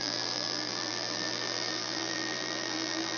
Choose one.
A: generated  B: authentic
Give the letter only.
A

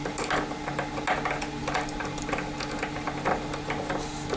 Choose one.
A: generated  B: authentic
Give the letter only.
B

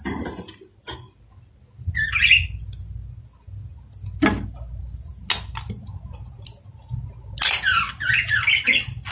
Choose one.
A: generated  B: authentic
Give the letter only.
B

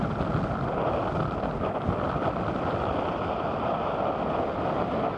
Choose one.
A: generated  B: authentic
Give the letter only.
B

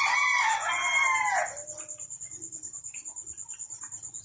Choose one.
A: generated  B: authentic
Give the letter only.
B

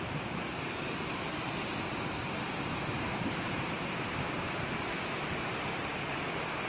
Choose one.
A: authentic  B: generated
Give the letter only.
A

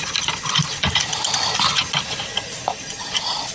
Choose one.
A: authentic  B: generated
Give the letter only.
A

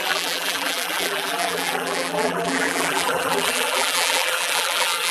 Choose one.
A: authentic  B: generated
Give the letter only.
B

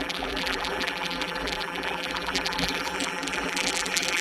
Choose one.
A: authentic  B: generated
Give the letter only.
B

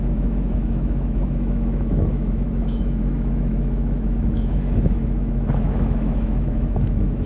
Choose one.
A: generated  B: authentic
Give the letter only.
A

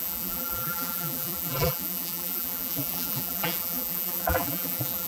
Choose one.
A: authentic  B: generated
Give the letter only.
B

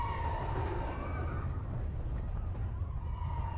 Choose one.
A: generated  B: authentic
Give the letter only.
B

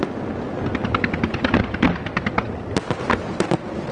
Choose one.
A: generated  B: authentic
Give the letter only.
B